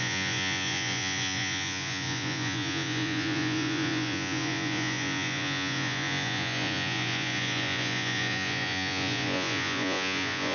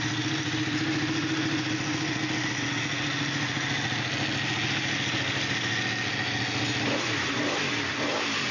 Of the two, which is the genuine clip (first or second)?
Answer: second